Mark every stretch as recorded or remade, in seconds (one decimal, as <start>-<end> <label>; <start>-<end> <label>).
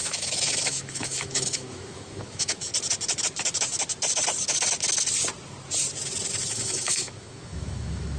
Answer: 0.0-2.7 remade; 2.7-6.4 recorded; 6.4-8.2 remade